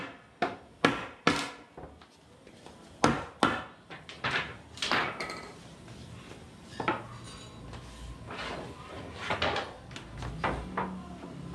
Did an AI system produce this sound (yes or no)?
no